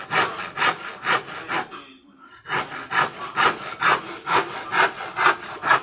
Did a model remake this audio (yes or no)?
no